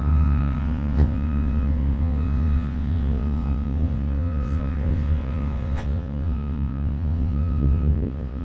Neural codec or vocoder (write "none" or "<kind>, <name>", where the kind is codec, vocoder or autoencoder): vocoder, WaveNeXt